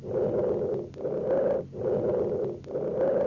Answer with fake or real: real